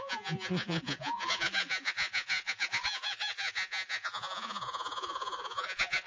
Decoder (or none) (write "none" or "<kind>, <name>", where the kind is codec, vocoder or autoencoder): vocoder, Vocos